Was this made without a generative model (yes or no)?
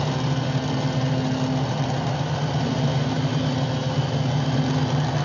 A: yes